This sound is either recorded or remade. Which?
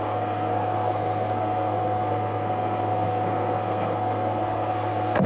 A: remade